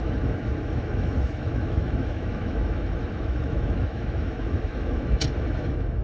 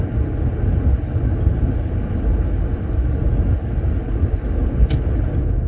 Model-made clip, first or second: first